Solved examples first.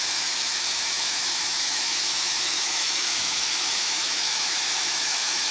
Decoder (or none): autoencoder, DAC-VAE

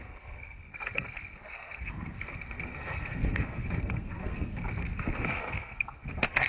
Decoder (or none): codec, SNAC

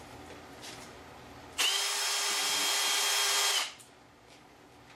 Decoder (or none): none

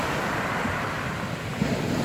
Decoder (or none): none